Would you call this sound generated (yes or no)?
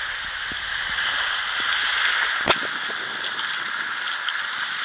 no